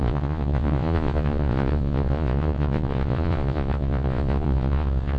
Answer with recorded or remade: remade